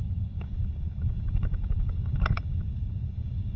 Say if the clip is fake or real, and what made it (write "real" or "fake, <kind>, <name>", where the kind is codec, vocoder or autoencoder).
fake, codec, DAC